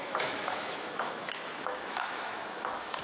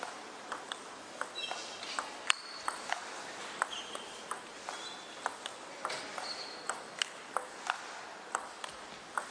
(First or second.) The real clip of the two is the second